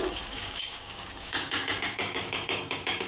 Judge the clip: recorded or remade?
remade